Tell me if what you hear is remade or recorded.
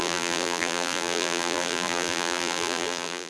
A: remade